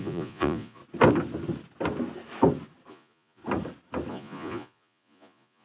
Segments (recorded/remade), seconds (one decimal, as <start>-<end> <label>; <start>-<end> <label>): 0.0-0.8 remade; 0.8-2.9 recorded; 2.9-3.4 remade; 3.4-4.1 recorded; 4.1-5.6 remade